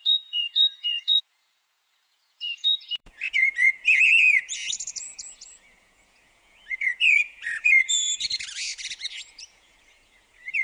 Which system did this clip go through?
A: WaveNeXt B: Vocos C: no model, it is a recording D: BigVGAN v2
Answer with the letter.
B